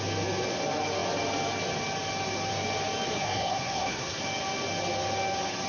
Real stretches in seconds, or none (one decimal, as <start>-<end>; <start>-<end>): 0.0-3.1; 4.2-5.7